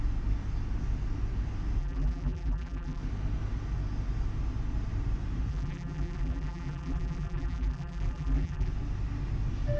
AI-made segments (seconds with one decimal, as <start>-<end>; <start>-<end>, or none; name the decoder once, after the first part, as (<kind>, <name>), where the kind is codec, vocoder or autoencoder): 1.8-3.0 (vocoder, BigVGAN v2); 5.5-8.7